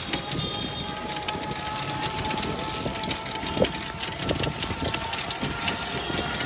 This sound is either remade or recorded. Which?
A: recorded